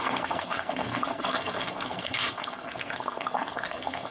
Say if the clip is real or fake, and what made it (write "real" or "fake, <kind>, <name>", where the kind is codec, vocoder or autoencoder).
fake, codec, SNAC